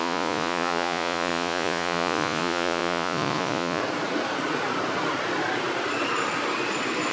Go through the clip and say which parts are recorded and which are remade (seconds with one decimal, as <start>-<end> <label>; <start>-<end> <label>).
0.0-3.8 remade; 3.8-7.1 recorded